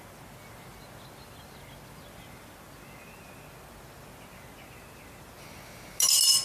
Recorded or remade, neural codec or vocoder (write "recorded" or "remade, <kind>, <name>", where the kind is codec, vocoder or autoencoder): recorded